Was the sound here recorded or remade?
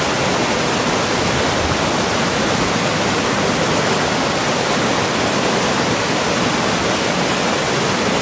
recorded